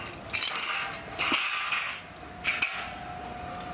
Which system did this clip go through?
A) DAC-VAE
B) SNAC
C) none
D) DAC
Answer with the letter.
C